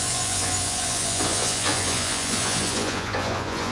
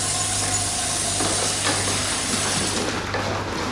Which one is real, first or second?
second